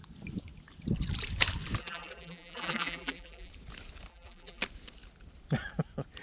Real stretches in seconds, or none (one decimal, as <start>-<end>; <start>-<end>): 0.0-1.8; 3.5-4.1; 4.6-6.2

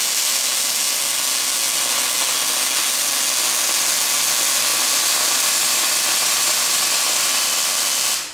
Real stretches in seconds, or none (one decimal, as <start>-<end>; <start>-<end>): 0.0-4.7; 7.5-8.3

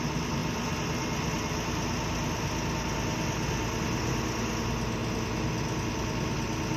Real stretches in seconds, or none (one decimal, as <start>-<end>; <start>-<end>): 0.0-6.8

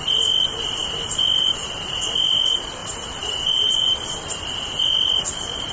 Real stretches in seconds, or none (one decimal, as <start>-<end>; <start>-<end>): 0.0-2.8; 4.4-5.7

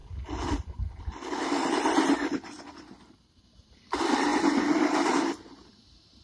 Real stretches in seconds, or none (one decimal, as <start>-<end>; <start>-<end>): 0.0-2.6; 4.3-5.5

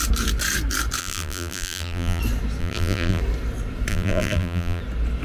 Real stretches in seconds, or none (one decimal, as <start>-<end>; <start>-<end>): 0.0-1.0; 2.2-2.6; 3.2-3.9; 4.8-5.2